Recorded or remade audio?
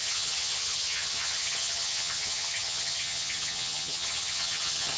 remade